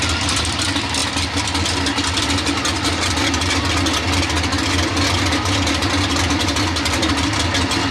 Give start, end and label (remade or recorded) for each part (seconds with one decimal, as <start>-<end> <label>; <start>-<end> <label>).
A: 0.0-7.9 recorded